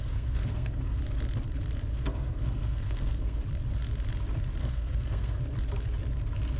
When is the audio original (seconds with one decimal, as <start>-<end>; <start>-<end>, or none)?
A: 1.0-1.9; 3.4-4.6; 5.4-6.6